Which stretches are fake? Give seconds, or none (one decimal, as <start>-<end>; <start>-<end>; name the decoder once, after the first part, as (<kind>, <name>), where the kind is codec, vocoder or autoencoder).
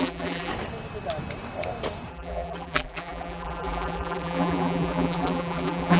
0.0-0.5 (vocoder, BigVGAN v2); 2.1-6.0